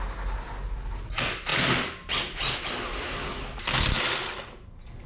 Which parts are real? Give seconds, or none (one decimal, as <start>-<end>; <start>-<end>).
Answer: 0.0-5.1